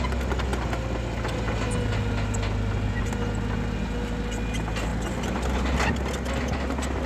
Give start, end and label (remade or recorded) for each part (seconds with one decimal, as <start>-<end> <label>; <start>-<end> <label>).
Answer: 0.0-7.1 recorded